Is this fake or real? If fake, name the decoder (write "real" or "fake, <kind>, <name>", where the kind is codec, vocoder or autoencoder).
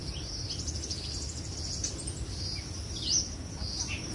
real